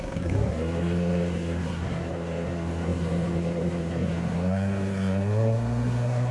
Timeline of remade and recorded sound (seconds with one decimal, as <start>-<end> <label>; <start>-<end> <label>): 0.0-6.3 remade